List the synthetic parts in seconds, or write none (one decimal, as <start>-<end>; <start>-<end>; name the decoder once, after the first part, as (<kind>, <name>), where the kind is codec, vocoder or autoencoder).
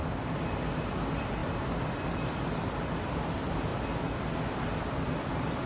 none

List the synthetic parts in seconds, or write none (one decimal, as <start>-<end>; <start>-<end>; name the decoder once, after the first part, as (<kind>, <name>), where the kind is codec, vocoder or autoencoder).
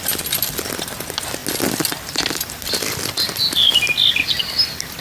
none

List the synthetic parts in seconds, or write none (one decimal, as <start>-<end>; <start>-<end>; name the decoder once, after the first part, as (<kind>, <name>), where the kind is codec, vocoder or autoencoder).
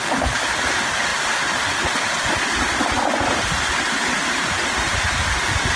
none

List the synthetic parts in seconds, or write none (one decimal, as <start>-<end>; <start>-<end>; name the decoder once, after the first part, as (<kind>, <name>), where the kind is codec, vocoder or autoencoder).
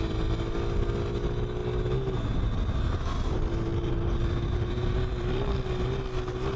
3.7-5.7 (vocoder, BigVGAN v2)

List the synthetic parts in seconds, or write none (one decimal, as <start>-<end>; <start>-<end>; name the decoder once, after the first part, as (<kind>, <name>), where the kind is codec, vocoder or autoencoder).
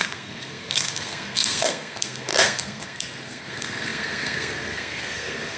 0.0-5.6 (codec, SNAC)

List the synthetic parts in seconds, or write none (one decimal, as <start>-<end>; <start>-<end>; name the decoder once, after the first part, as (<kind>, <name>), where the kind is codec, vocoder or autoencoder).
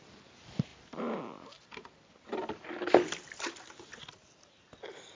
none